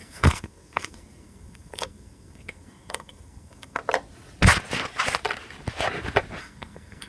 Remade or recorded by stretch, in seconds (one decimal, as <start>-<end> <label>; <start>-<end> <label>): 0.0-3.8 remade; 3.8-6.4 recorded; 6.4-7.1 remade